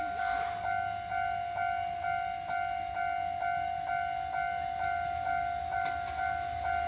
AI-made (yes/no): no